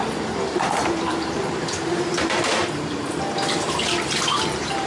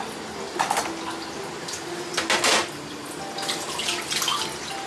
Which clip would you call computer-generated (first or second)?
first